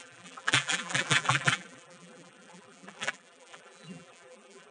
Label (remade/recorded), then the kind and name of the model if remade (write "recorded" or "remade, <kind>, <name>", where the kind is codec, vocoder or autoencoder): remade, vocoder, BigVGAN v2